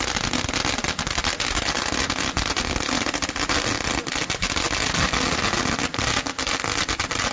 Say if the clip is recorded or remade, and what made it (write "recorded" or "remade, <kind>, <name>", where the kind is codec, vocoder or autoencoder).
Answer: recorded